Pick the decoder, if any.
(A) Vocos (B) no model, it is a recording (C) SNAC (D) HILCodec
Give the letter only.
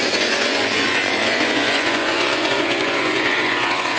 A